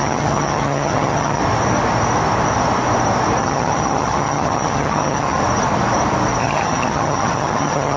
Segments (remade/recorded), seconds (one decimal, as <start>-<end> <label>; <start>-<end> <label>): 0.0-1.4 remade; 1.4-3.4 recorded; 3.4-5.4 remade; 5.4-6.4 recorded; 6.4-8.0 remade